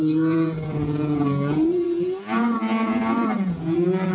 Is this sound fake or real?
fake